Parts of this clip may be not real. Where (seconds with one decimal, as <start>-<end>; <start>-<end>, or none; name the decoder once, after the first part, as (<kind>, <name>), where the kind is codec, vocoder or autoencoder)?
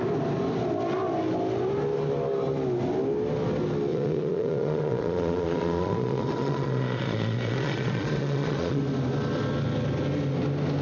3.9-8.8 (vocoder, Vocos)